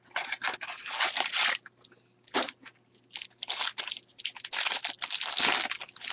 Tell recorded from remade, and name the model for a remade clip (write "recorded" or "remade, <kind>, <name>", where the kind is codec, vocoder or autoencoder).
recorded